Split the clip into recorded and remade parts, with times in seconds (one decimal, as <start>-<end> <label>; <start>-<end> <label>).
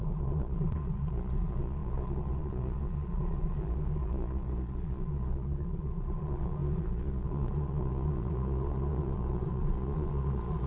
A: 0.0-10.7 remade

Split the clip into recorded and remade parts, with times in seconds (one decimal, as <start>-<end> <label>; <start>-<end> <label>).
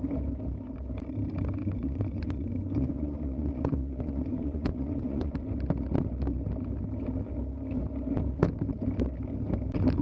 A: 0.0-1.6 recorded; 1.6-5.3 remade; 5.3-10.0 recorded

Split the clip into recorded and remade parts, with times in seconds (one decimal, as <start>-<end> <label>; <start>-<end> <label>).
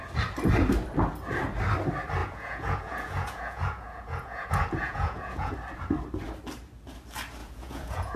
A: 0.0-2.2 recorded; 2.2-5.5 remade; 5.5-7.4 recorded; 7.4-8.2 remade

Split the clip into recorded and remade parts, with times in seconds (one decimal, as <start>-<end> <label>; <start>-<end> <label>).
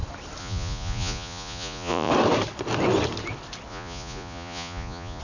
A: 0.0-0.4 recorded; 0.4-2.1 remade; 2.1-3.7 recorded; 3.7-5.2 remade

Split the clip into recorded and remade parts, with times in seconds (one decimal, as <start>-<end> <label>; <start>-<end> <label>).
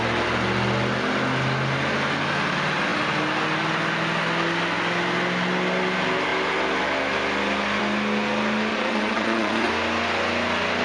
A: 0.0-8.7 recorded; 8.7-9.7 remade; 9.7-10.8 recorded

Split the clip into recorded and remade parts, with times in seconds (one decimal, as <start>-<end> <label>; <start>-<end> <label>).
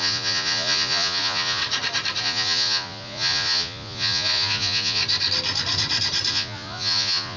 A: 0.0-1.6 remade; 1.6-2.2 recorded; 2.2-5.0 remade; 5.0-6.3 recorded; 6.3-7.4 remade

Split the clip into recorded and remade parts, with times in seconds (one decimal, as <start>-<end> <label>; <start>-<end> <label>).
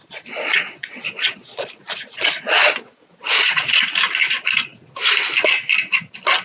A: 0.0-3.8 remade; 3.8-6.4 recorded